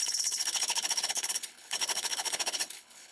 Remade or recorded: remade